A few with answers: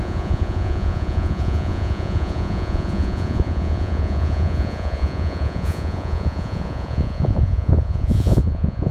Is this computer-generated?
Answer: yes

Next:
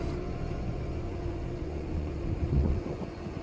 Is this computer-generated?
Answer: yes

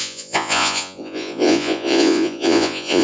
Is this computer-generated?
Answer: yes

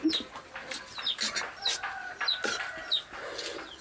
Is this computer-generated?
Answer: no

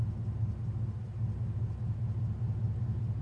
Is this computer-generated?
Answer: no